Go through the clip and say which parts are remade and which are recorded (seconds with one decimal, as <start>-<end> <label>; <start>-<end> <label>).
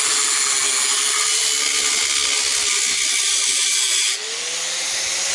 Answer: 0.0-5.3 recorded